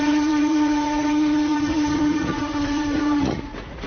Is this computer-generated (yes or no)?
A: yes